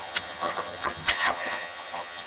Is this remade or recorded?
remade